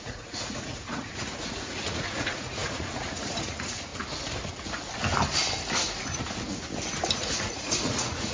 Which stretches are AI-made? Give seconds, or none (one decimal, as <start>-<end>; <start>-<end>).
0.0-3.9; 7.2-8.3